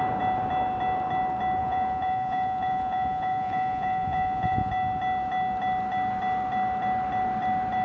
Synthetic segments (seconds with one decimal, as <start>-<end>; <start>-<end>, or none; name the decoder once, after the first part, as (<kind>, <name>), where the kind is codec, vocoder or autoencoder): 1.6-4.7 (vocoder, Vocos)